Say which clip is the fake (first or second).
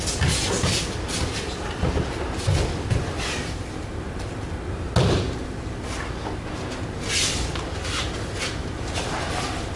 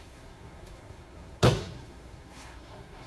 second